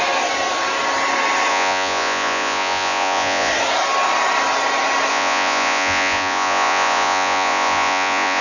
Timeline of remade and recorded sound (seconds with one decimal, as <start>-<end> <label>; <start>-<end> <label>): 0.0-1.5 recorded; 1.5-3.5 remade; 3.5-5.1 recorded; 5.1-8.4 remade